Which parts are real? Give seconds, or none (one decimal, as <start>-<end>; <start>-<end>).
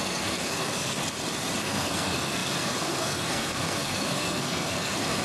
1.0-1.6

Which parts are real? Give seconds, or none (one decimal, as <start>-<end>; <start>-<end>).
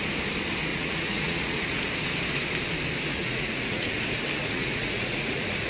0.0-0.7; 1.8-3.1; 4.0-4.4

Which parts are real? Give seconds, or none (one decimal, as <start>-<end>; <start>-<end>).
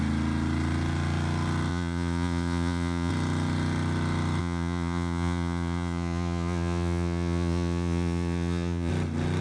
0.0-1.7; 3.1-4.4; 8.9-9.4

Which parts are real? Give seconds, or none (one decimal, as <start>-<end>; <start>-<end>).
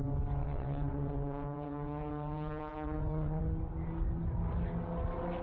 0.0-0.4; 3.4-5.4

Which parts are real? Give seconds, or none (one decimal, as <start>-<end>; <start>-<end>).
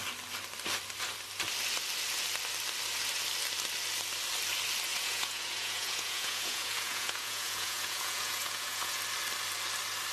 0.0-4.9; 9.0-10.1